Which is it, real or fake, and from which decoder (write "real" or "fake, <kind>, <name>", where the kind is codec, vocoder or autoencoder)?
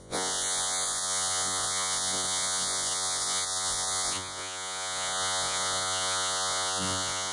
fake, vocoder, Vocos